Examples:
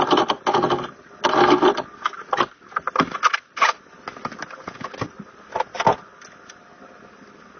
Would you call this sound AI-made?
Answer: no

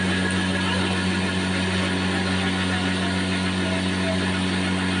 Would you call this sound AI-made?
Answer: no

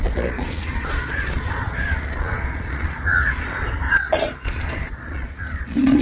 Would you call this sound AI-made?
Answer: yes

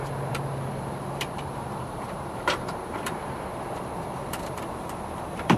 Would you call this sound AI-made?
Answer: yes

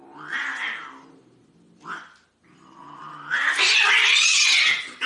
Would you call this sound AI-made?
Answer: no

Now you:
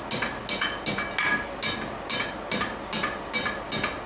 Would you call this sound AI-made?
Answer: no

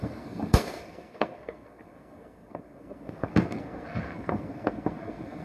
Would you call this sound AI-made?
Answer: yes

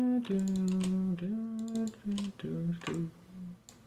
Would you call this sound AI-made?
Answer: no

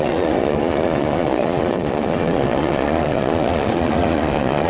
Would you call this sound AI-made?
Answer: yes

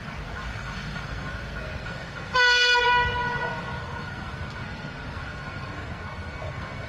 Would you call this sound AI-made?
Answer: yes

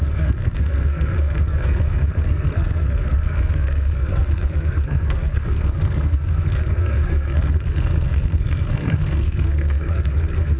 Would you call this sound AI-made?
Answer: yes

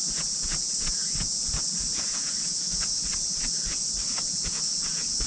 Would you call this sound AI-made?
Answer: yes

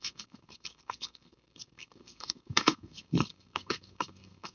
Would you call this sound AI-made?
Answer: yes